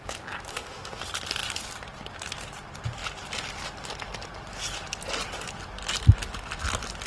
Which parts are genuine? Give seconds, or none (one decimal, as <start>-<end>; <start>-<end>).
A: 0.0-0.5; 1.0-7.1